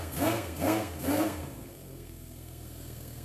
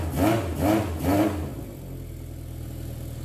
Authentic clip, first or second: second